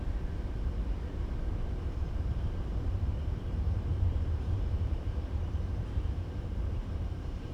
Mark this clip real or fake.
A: fake